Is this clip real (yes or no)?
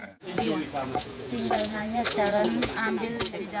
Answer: no